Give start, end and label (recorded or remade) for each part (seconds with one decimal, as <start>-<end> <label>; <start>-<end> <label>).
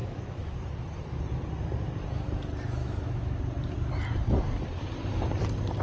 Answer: 0.0-0.6 remade; 0.6-2.8 recorded; 2.8-3.4 remade; 3.4-5.8 recorded